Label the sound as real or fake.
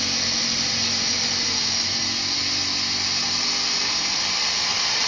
real